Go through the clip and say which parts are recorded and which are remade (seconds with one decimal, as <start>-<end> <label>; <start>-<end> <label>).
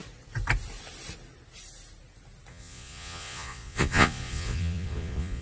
0.0-2.5 recorded; 2.5-5.4 remade